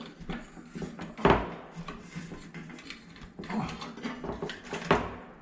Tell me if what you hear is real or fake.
real